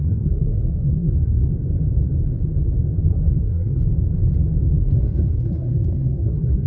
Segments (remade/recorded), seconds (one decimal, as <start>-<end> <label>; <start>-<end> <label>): 0.0-1.5 remade; 1.5-3.1 recorded; 3.1-3.8 remade; 3.8-4.8 recorded; 4.8-6.7 remade